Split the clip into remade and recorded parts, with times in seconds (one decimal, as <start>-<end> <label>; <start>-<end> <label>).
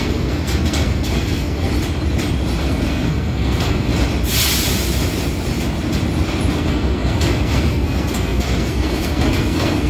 0.0-1.7 remade; 1.7-2.6 recorded; 2.6-3.9 remade; 3.9-6.5 recorded; 6.5-9.9 remade